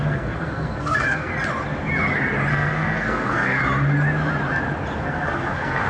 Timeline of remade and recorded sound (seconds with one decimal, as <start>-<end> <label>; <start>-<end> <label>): 0.0-1.3 remade; 1.3-2.5 recorded; 2.5-3.6 remade; 3.6-5.0 recorded; 5.0-5.9 remade